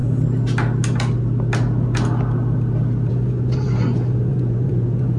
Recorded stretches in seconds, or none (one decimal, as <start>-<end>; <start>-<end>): 0.0-3.1